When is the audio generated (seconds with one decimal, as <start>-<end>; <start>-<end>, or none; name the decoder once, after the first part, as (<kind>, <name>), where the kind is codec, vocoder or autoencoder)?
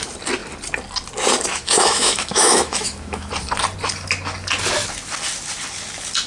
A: 1.5-3.3 (autoencoder, DAC-VAE)